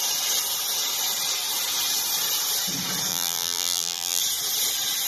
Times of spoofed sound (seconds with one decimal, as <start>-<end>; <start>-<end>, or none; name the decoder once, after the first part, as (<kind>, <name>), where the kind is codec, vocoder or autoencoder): 3.1-4.2 (vocoder, BigVGAN v2)

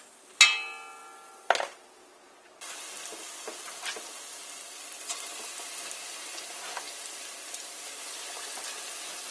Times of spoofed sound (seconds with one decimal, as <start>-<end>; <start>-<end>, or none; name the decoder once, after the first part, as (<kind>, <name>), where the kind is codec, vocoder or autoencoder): none

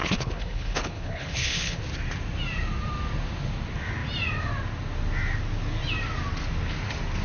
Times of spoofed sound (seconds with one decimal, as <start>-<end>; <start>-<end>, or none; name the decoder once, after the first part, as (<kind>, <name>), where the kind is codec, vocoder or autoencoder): 0.0-1.8 (codec, HILCodec)